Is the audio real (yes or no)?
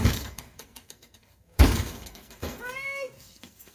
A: no